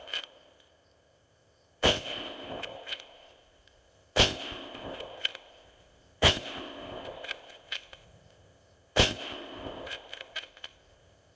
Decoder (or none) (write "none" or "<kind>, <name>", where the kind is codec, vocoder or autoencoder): codec, ZipCodec